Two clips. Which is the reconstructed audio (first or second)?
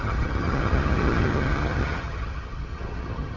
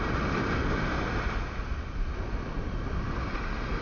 first